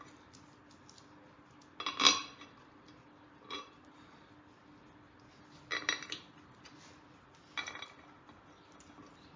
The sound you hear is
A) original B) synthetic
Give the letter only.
A